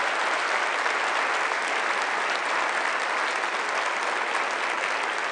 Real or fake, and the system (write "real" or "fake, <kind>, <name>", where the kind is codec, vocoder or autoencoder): real